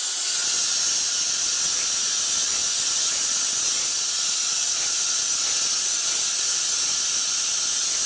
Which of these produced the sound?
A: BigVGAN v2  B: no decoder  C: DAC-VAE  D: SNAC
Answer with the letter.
B